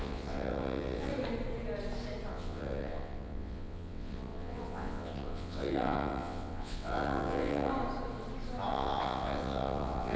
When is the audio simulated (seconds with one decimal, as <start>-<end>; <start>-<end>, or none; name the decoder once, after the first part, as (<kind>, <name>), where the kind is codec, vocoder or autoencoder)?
0.0-1.1 (vocoder, WaveNeXt); 2.3-7.7; 8.7-10.2